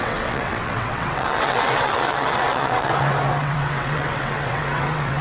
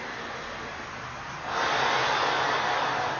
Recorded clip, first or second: second